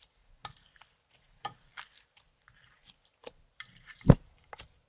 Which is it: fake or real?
fake